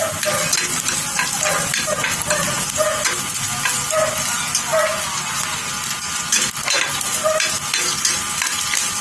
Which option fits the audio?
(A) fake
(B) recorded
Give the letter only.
B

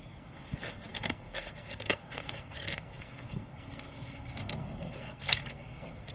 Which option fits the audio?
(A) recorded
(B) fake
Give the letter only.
B